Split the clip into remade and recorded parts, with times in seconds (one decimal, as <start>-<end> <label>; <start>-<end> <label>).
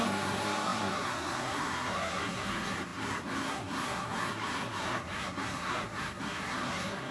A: 0.0-7.1 remade